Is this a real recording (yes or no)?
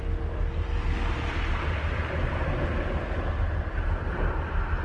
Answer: yes